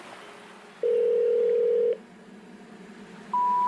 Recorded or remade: recorded